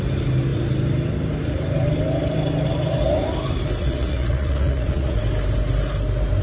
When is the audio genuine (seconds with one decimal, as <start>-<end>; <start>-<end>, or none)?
0.0-3.8; 5.2-6.4